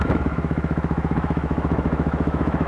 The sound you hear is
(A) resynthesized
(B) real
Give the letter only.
A